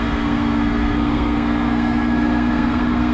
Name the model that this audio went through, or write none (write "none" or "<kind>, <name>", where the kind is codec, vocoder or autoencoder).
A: codec, SNAC